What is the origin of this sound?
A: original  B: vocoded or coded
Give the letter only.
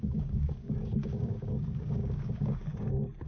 B